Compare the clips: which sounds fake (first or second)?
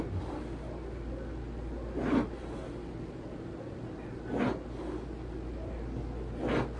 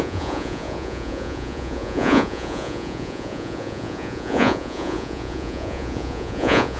second